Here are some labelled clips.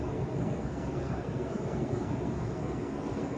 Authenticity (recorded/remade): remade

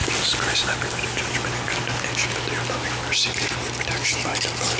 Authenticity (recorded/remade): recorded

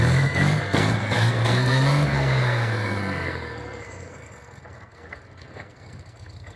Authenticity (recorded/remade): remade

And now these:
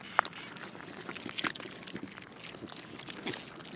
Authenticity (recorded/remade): recorded